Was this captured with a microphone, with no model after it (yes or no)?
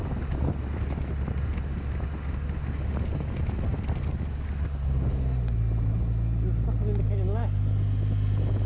yes